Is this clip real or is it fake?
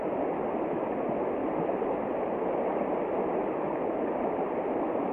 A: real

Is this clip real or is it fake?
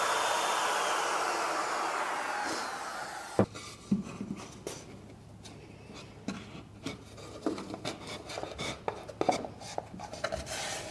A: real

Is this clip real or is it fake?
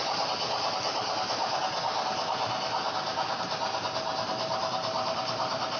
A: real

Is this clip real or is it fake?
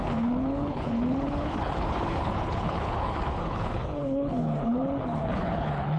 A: fake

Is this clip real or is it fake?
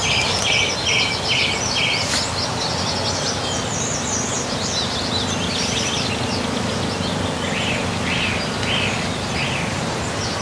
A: real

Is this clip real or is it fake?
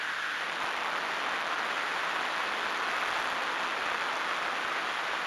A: real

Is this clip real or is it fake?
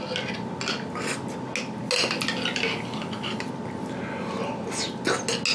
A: real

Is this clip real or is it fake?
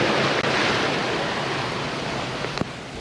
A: real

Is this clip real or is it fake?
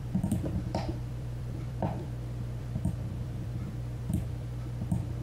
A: fake